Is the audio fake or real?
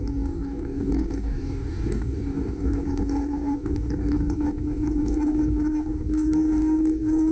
fake